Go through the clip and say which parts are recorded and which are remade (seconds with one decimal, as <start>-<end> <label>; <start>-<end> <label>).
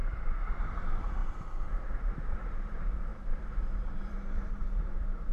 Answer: 0.0-5.3 remade